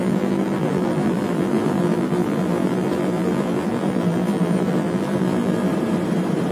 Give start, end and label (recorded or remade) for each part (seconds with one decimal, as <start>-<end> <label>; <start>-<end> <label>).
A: 0.0-5.7 remade; 5.7-6.5 recorded